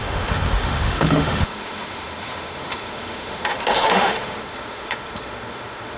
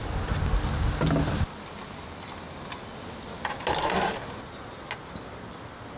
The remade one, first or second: first